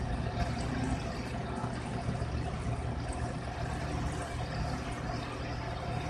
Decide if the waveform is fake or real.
real